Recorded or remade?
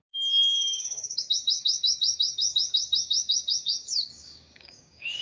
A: remade